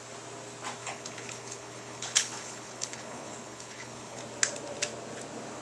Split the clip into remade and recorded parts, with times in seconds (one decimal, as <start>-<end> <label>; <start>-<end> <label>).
0.0-0.8 recorded; 0.8-4.2 remade; 4.2-5.6 recorded